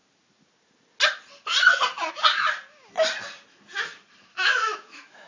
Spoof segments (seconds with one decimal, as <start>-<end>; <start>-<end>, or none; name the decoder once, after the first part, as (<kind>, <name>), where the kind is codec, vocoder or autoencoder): 4.3-5.3 (autoencoder, DAC-VAE)